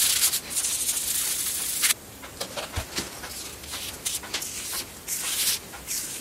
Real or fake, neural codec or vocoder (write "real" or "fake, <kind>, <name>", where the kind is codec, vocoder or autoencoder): real